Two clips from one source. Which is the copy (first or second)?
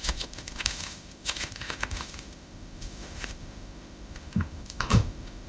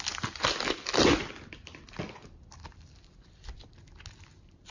first